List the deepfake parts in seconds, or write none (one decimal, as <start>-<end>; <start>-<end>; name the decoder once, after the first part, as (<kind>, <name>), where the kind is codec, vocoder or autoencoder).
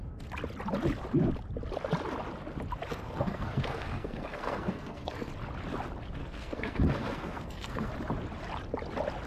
2.9-5.3 (codec, SNAC); 6.2-7.9